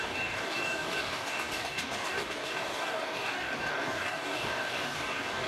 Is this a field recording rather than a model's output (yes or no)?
no